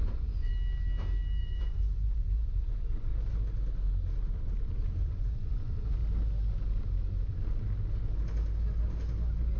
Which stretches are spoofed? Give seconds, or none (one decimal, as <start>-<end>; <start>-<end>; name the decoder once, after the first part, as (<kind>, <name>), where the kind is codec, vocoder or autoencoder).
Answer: 0.0-0.5 (vocoder, Vocos); 1.4-3.1; 5.0-6.0